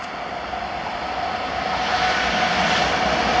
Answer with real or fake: real